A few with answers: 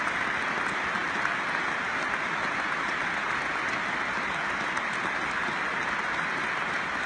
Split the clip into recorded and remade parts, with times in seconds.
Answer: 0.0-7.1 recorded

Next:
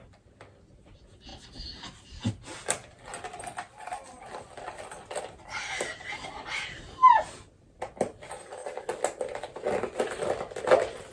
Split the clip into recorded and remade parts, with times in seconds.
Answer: 0.0-11.1 recorded

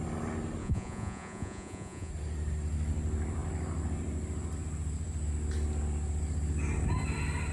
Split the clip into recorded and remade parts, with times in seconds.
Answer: 0.0-0.6 recorded; 0.6-2.1 remade; 2.1-7.5 recorded

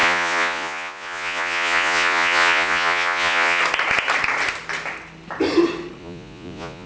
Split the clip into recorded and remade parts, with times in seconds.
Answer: 0.0-3.6 remade; 3.6-6.0 recorded; 6.0-6.9 remade